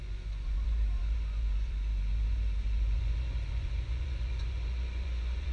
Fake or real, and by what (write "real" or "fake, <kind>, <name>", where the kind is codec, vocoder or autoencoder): fake, vocoder, Vocos